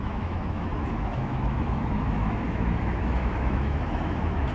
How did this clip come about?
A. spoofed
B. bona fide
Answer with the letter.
A